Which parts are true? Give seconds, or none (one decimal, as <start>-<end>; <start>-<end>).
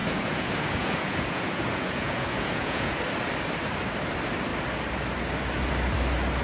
3.0-6.4